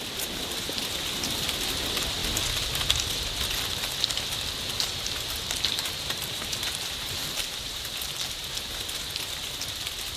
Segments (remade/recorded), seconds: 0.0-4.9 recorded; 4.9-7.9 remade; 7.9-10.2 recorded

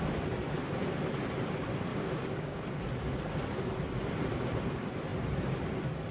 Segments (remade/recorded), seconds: 0.0-1.9 recorded; 1.9-2.6 remade; 2.6-6.1 recorded

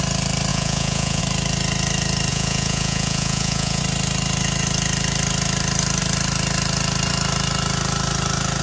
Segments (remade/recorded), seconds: 0.0-0.5 recorded; 0.5-1.2 remade; 1.2-2.3 recorded; 2.3-3.8 remade; 3.8-8.6 recorded

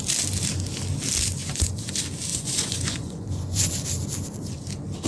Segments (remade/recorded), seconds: 0.0-1.4 recorded; 1.4-1.9 remade; 1.9-2.3 recorded; 2.3-3.7 remade; 3.7-5.1 recorded

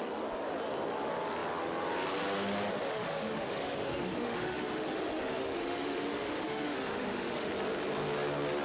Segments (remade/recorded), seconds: 0.0-2.7 recorded; 2.7-7.5 remade; 7.5-8.6 recorded

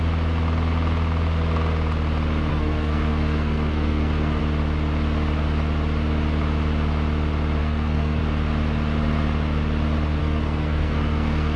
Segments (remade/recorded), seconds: 0.0-2.5 recorded; 2.5-4.4 remade; 4.4-7.6 recorded; 7.6-8.2 remade; 8.2-10.2 recorded; 10.2-11.6 remade

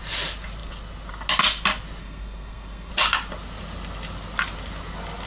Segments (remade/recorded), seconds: 0.0-2.0 recorded; 2.0-2.9 remade; 2.9-5.3 recorded